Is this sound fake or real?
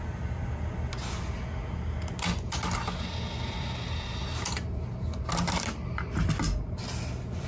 real